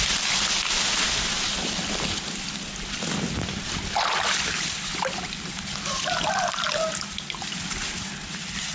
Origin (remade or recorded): recorded